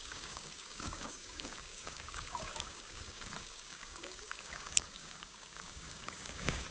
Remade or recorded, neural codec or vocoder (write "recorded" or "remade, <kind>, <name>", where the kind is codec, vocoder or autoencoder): remade, codec, DAC